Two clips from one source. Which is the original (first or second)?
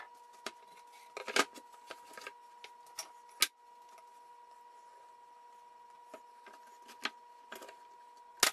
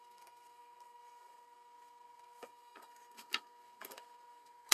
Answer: first